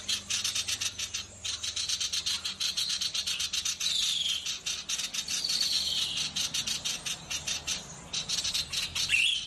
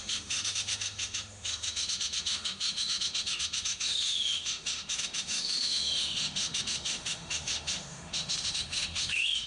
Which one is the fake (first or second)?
second